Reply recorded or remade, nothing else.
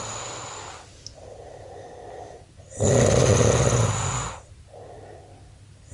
recorded